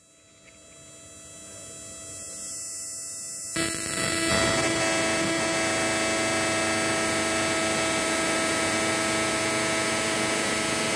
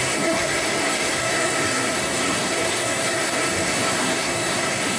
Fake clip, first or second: second